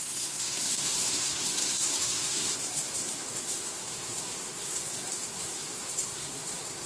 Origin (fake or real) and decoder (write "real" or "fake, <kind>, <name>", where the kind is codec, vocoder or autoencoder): fake, codec, SNAC